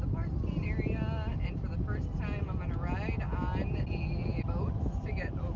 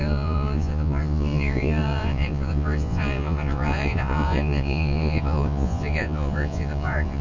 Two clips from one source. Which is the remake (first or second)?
second